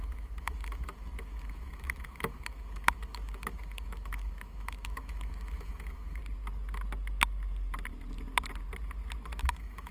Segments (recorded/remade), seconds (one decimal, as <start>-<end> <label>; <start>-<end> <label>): 0.0-6.2 remade; 6.2-9.4 recorded; 9.4-9.9 remade